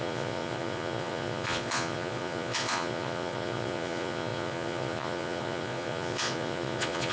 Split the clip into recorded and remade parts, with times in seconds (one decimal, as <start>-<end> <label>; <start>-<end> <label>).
0.0-7.1 remade